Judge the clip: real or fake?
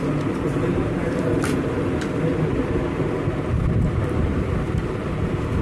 real